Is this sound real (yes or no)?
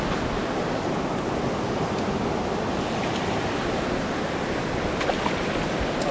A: yes